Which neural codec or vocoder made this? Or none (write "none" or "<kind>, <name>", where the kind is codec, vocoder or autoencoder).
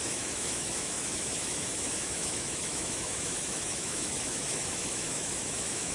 autoencoder, DAC-VAE